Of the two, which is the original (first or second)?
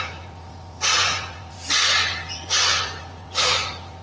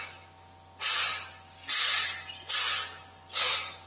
second